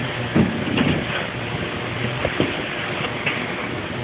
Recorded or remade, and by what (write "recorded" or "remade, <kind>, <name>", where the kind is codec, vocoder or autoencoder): recorded